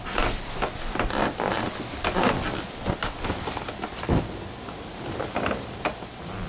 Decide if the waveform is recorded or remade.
recorded